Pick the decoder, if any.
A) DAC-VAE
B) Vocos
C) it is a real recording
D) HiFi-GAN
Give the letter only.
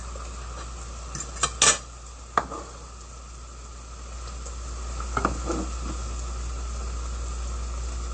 C